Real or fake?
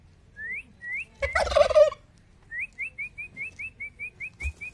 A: real